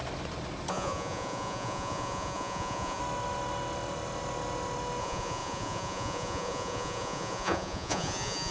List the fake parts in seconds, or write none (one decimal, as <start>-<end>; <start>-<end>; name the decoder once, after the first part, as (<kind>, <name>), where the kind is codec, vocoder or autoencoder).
0.7-3.0 (vocoder, Vocos); 5.0-8.5